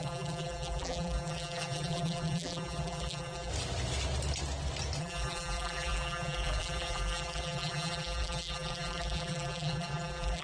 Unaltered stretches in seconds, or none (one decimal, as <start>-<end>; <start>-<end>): 3.5-5.0